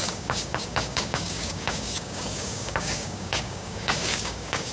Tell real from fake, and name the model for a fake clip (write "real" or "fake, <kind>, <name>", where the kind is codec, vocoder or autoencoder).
fake, codec, DAC